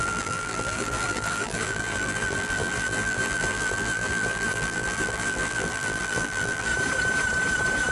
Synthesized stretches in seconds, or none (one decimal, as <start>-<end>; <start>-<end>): 0.0-6.7